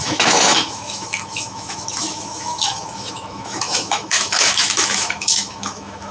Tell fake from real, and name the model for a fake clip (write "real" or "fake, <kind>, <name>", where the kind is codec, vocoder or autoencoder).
fake, autoencoder, DAC-VAE